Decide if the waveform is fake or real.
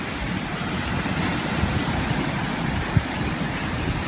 real